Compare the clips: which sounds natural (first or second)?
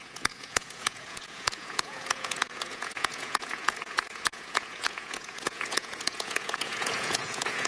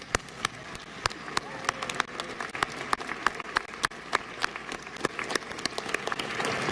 second